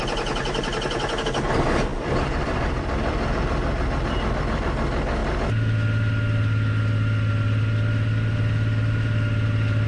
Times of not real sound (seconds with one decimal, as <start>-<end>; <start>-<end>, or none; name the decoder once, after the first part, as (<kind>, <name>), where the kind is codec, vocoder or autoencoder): 1.9-4.4 (vocoder, BigVGAN v2)